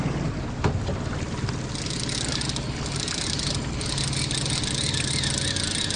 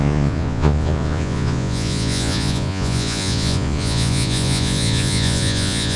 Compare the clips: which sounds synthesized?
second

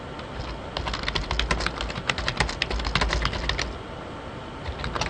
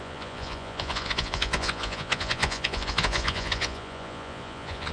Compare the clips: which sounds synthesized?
second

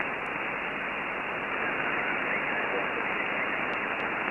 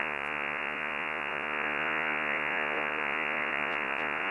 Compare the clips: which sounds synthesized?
second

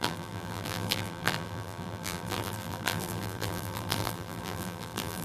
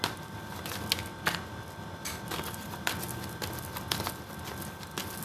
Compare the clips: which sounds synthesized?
first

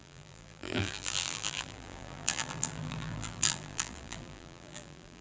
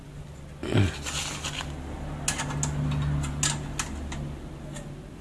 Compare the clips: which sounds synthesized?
first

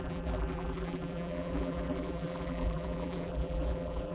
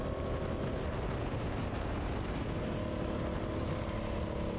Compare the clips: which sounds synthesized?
first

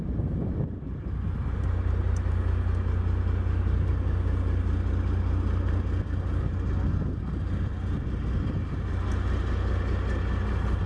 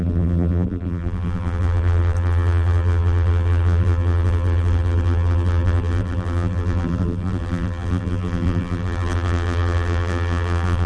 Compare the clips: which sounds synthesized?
second